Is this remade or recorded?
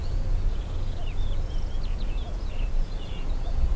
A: remade